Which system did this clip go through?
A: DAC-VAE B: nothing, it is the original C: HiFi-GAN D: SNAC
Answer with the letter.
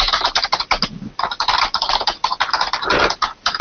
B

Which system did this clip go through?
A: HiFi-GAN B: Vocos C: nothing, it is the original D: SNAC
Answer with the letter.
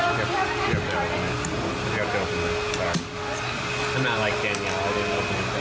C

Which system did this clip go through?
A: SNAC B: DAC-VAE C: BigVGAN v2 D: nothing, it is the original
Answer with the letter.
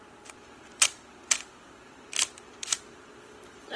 C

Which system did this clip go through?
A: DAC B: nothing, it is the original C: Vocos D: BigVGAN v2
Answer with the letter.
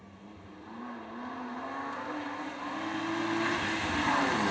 B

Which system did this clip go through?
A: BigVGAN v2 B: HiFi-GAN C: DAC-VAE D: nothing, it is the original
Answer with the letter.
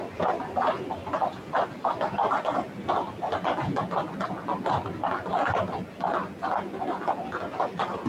D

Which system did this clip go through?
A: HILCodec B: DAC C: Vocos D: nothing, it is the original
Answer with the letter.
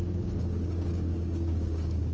B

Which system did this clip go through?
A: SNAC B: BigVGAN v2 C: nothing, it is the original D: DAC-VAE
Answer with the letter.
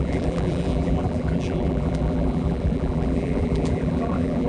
B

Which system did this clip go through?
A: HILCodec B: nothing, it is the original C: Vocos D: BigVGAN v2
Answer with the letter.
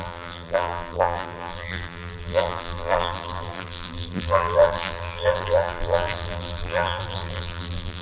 D